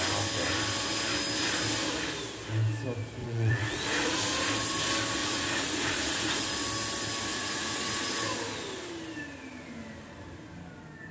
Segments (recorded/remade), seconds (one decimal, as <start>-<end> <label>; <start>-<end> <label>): 0.0-3.2 recorded; 3.2-4.5 remade; 4.5-5.2 recorded; 5.2-6.5 remade; 6.5-7.3 recorded; 7.3-8.1 remade; 8.1-11.1 recorded